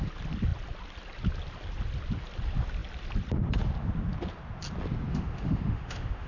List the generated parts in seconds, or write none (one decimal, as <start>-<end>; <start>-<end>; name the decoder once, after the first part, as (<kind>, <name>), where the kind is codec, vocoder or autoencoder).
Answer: 5.1-6.3 (autoencoder, DAC-VAE)